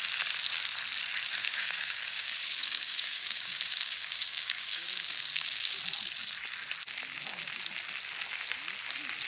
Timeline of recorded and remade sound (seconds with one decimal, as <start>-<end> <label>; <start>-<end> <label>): 0.0-1.4 recorded; 1.4-5.8 remade; 5.8-9.3 recorded